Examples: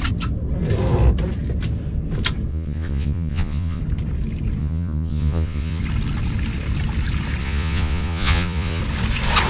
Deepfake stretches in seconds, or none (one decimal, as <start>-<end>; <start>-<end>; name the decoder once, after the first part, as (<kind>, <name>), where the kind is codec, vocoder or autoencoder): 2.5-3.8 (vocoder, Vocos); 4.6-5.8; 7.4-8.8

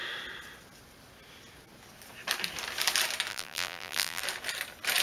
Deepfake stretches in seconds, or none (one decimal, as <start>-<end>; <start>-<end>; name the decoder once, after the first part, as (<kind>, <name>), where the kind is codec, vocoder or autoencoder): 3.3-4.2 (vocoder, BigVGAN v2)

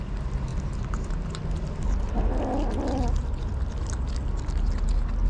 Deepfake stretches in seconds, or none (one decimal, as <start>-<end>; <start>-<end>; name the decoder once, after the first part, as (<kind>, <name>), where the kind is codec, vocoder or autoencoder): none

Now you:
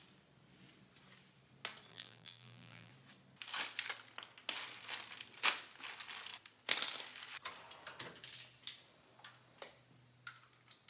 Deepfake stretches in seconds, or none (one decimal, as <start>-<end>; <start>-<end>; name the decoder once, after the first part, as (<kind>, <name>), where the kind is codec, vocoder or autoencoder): 1.9-2.9 (vocoder, BigVGAN v2)

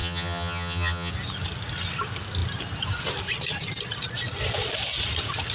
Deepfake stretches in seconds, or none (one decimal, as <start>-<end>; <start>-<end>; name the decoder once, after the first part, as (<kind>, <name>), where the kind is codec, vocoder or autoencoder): 0.0-1.1 (vocoder, HiFi-GAN)